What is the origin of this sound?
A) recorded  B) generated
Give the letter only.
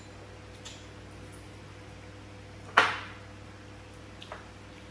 A